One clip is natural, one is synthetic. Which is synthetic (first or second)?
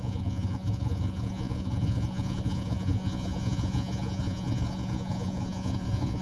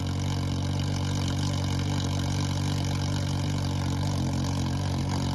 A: first